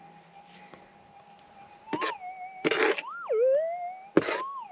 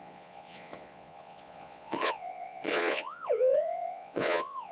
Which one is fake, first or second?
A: second